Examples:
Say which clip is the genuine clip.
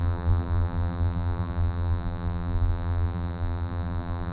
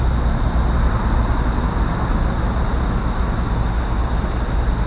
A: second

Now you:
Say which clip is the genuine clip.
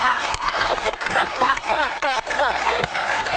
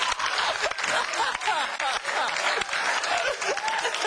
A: second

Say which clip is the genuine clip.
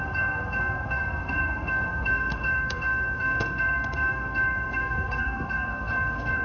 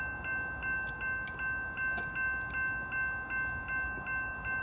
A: second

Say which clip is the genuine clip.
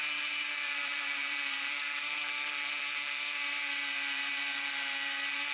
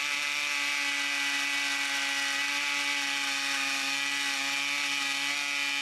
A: second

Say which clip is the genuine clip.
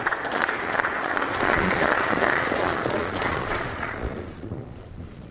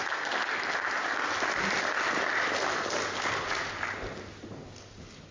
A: second